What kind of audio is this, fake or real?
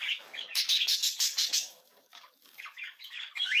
fake